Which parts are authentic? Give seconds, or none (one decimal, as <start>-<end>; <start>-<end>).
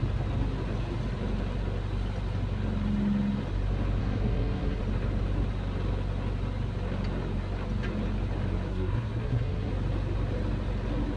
0.0-4.0; 4.8-8.7; 9.7-11.2